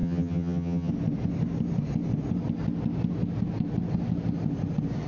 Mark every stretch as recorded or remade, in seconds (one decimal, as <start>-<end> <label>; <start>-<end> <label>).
0.0-0.9 remade; 0.9-5.1 recorded